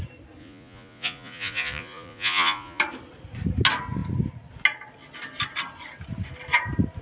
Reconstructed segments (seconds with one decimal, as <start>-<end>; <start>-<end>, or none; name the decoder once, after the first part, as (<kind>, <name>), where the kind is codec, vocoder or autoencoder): 0.4-2.8 (vocoder, Vocos)